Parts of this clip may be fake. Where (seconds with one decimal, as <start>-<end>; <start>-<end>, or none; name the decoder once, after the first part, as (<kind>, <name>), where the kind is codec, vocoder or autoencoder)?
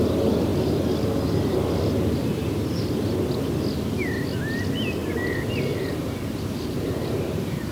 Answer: 6.0-7.7 (vocoder, BigVGAN v2)